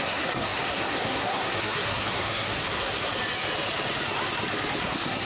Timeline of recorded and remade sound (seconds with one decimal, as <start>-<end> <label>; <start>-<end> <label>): 0.0-3.1 remade; 3.1-4.8 recorded; 4.8-5.2 remade

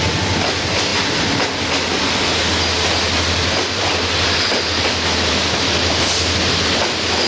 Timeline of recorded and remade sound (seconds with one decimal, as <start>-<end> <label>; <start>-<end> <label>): 0.0-7.3 recorded